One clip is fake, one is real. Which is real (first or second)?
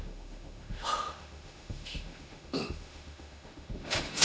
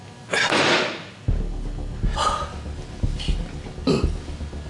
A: second